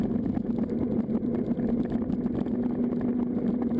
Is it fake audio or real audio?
real